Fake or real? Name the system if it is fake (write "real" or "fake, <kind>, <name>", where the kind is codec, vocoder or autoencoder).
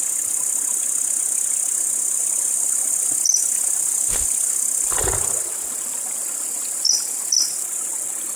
real